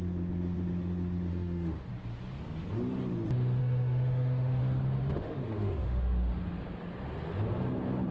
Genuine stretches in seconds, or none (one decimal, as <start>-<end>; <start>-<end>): 0.0-1.3; 1.9-3.6; 4.6-5.0; 6.3-8.1